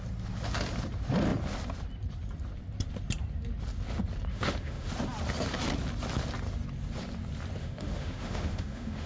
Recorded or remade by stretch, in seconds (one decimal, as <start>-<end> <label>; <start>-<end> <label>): 0.0-4.3 recorded; 4.3-4.9 remade; 4.9-7.6 recorded; 7.6-9.1 remade